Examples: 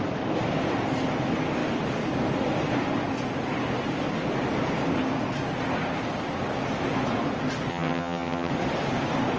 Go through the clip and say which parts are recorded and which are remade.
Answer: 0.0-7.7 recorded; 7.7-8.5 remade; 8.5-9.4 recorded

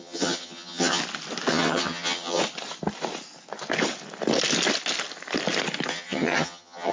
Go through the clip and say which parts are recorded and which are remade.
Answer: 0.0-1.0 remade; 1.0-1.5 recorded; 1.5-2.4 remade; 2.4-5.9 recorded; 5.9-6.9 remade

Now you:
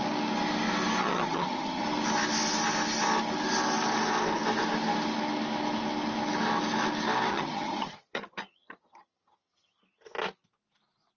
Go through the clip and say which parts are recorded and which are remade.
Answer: 0.0-1.0 recorded; 1.0-1.8 remade; 1.8-7.3 recorded; 7.3-9.8 remade; 9.8-11.2 recorded

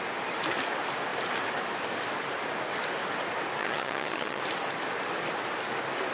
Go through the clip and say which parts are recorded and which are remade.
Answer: 0.0-3.6 recorded; 3.6-4.4 remade; 4.4-6.1 recorded

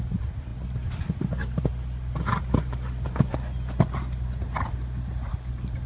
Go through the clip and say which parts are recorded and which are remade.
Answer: 0.0-5.9 recorded

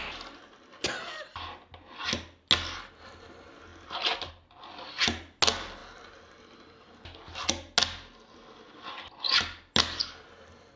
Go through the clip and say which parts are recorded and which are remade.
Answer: 0.0-10.8 recorded